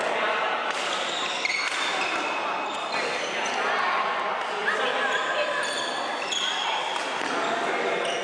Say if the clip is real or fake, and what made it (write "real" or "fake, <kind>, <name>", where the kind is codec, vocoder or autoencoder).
real